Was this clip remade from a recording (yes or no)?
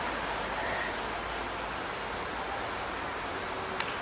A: no